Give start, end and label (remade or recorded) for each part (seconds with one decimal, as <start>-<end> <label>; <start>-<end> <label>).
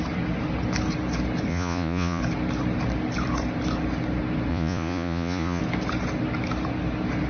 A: 0.0-1.5 recorded; 1.5-2.2 remade; 2.2-4.5 recorded; 4.5-5.6 remade; 5.6-7.3 recorded